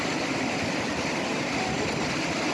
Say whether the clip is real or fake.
real